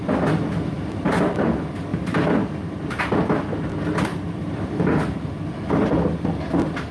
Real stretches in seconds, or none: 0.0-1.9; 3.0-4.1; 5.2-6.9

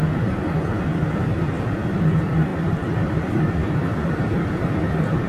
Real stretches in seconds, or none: 0.0-2.5; 4.5-5.3

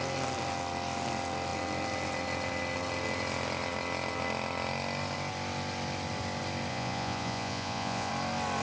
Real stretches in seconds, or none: 0.0-6.7; 8.1-8.6

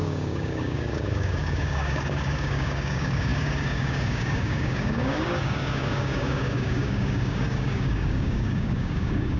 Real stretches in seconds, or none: none

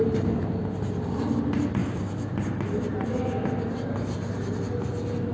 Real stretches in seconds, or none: 0.0-5.3